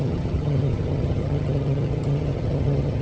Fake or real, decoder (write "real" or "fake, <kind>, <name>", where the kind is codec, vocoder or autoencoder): fake, vocoder, HiFi-GAN